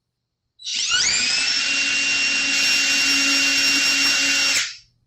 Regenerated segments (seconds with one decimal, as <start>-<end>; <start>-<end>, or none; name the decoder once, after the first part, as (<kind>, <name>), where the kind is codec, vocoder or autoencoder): 0.7-1.9 (vocoder, BigVGAN v2)